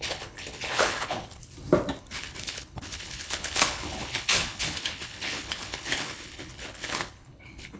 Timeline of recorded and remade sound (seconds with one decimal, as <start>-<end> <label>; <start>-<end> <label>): 0.0-1.4 remade; 1.4-2.0 recorded; 2.0-7.8 remade